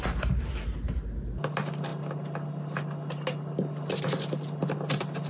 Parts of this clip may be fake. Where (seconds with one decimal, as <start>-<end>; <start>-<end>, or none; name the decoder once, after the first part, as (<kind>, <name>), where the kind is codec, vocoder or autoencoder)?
none